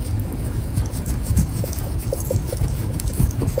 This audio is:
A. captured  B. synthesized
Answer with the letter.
B